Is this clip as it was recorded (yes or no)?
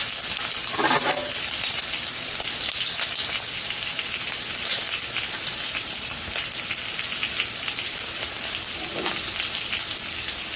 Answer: yes